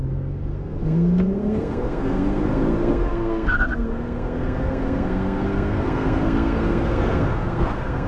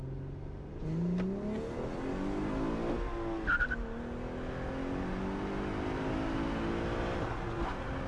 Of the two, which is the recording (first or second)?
second